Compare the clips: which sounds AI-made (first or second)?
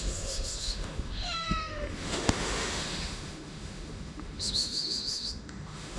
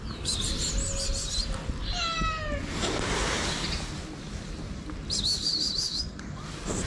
first